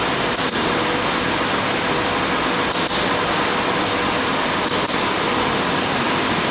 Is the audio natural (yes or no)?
yes